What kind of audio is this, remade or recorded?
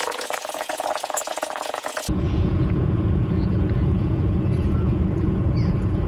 remade